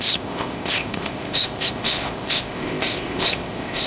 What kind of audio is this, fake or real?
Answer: fake